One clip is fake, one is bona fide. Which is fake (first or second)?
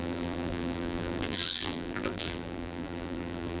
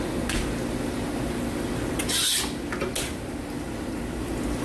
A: first